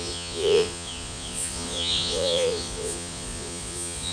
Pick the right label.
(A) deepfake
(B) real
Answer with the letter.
A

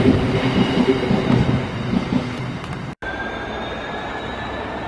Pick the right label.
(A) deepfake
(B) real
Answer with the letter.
A